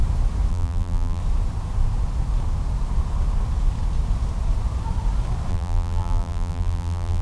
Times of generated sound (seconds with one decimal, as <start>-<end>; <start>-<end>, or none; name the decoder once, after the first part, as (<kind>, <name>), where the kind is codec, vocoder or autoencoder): 0.5-1.2 (vocoder, BigVGAN v2); 5.5-7.2